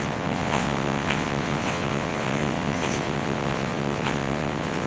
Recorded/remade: remade